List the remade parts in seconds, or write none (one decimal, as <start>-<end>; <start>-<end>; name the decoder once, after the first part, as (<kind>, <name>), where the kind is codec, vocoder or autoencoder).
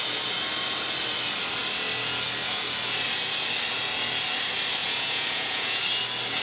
4.8-5.8 (vocoder, Vocos)